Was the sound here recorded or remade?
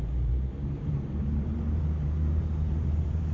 remade